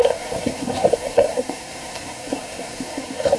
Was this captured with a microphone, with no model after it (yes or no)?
no